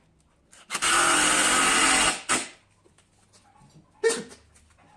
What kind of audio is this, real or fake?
real